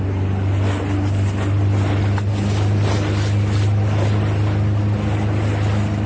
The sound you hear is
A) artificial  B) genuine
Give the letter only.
B